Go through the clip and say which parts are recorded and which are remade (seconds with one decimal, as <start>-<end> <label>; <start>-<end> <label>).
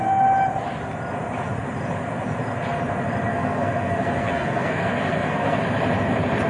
0.0-3.3 recorded; 3.3-5.6 remade; 5.6-6.5 recorded